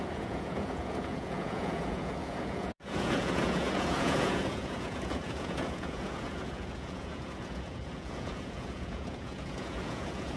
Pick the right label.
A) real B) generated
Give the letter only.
B